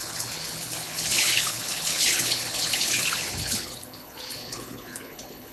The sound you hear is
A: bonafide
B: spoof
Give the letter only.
B